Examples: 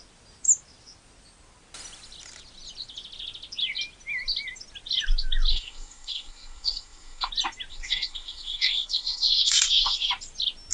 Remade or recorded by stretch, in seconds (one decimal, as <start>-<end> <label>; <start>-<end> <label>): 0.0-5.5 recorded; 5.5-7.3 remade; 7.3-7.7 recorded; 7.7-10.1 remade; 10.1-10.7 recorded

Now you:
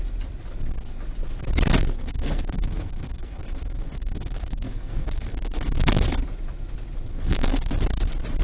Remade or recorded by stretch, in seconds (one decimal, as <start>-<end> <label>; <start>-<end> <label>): 0.0-1.8 recorded; 1.8-6.2 remade; 6.2-7.1 recorded; 7.1-7.7 remade; 7.7-8.4 recorded

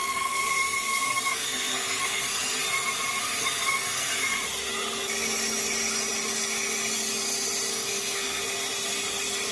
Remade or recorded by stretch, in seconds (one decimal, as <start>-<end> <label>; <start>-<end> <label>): 0.0-2.6 remade; 2.6-3.2 recorded; 3.2-4.1 remade; 4.1-7.7 recorded; 7.7-8.4 remade; 8.4-9.5 recorded

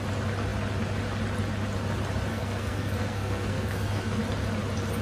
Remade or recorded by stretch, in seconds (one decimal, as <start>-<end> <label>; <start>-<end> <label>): 0.0-2.3 recorded; 2.3-4.2 remade; 4.2-5.0 recorded